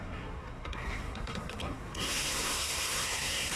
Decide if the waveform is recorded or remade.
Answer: remade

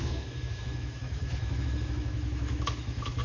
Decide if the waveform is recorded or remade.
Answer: remade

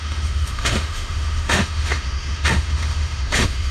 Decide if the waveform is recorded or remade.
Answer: remade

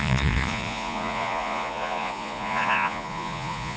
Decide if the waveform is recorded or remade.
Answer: remade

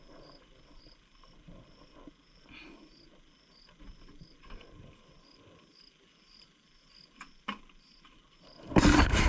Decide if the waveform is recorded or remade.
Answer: recorded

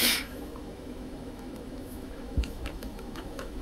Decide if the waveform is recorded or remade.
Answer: remade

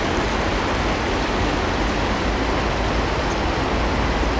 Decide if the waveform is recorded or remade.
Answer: recorded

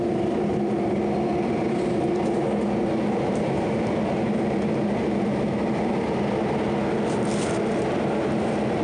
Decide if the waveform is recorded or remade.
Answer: recorded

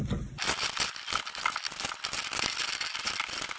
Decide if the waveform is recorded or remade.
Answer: recorded